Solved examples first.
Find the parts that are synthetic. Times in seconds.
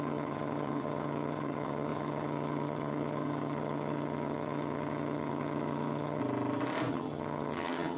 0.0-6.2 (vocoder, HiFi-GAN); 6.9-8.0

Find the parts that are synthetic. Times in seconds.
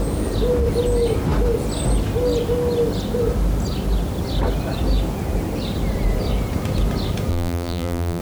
7.3-8.2 (vocoder, BigVGAN v2)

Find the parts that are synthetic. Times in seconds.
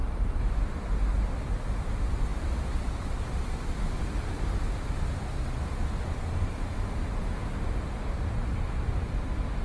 0.0-0.5 (vocoder, BigVGAN v2)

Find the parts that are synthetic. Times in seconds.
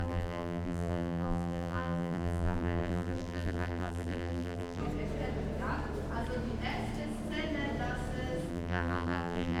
0.0-4.8 (vocoder, BigVGAN v2); 8.5-9.6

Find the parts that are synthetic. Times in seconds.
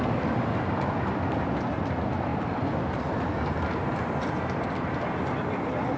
none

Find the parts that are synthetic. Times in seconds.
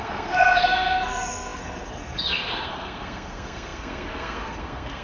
0.0-5.0 (codec, SNAC)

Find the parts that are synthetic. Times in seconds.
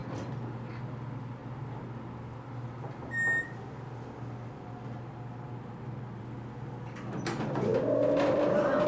none